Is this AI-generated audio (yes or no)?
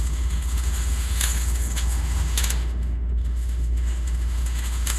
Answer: yes